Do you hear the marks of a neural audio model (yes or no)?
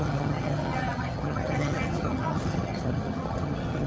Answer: yes